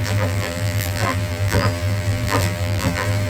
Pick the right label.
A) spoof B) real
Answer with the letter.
A